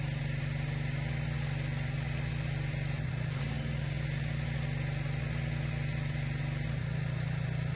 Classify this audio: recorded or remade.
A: recorded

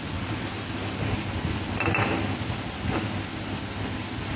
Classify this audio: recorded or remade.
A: recorded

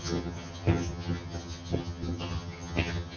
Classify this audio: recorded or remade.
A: remade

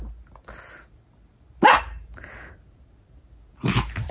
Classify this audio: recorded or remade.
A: recorded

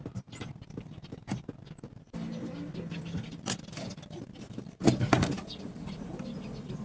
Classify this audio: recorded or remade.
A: recorded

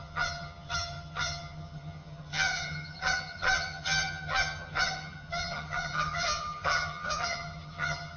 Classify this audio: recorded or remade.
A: remade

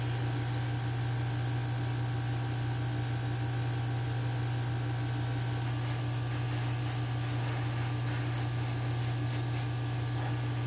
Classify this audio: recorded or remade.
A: recorded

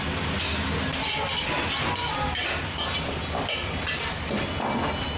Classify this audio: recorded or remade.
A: recorded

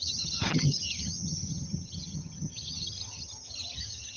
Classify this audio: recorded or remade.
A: remade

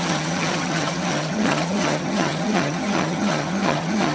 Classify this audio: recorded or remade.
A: remade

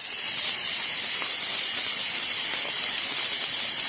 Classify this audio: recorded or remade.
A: recorded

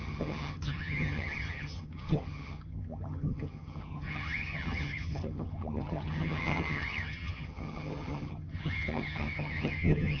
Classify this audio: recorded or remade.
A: remade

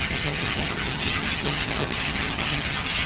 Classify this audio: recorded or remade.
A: remade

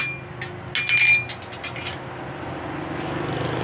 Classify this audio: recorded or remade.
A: recorded